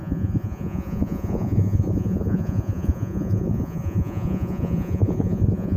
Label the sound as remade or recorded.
remade